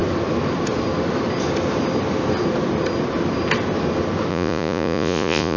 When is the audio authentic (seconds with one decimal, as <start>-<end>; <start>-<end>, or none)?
0.0-4.3